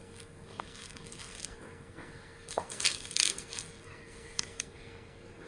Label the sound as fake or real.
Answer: fake